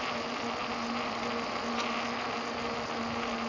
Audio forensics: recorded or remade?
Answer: recorded